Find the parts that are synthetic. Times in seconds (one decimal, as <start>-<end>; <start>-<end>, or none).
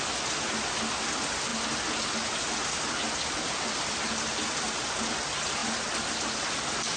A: none